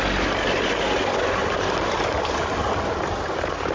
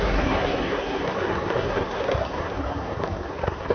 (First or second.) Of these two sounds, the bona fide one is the first